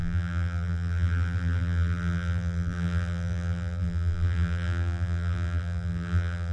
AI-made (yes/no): yes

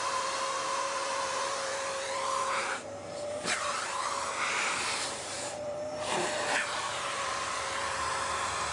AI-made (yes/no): yes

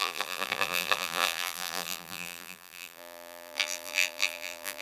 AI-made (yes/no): yes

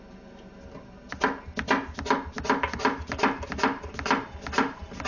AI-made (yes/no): no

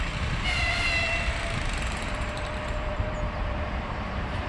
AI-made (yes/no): yes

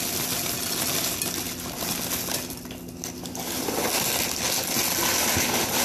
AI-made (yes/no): no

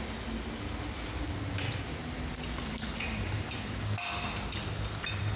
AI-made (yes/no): no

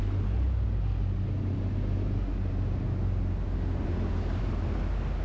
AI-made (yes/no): no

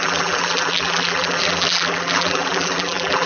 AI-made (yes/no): yes